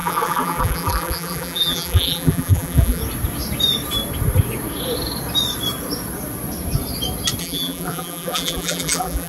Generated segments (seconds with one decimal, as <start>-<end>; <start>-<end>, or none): 0.0-3.0; 7.4-9.3